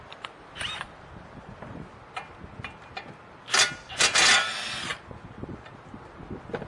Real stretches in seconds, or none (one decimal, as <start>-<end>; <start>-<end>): 0.0-6.7